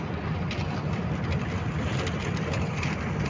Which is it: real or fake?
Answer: real